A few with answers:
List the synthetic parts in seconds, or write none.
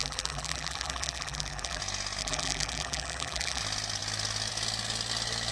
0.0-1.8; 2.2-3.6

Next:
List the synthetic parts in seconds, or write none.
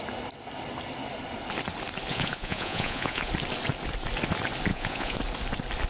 2.1-3.3; 4.7-5.2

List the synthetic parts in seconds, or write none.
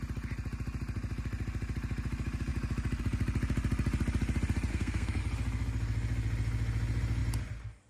4.7-5.2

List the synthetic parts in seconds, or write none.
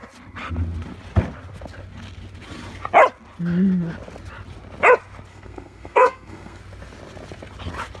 5.3-6.6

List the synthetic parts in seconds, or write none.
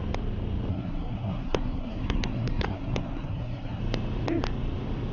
0.7-3.8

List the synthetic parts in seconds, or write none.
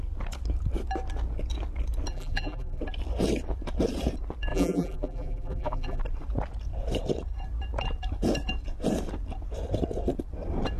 2.1-2.8; 4.5-6.0